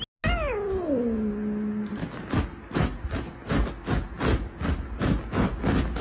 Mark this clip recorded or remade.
recorded